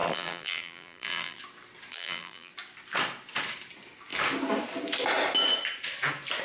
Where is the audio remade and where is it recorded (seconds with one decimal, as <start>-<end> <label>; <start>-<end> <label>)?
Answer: 0.0-1.4 remade; 1.4-1.9 recorded; 1.9-2.5 remade; 2.5-6.4 recorded